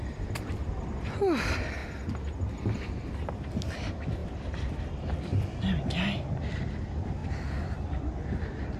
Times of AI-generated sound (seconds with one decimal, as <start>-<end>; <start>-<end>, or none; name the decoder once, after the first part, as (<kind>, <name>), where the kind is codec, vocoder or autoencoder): 0.0-1.8 (vocoder, BigVGAN v2); 3.5-5.3; 6.2-8.8